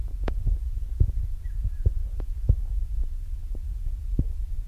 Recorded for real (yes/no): no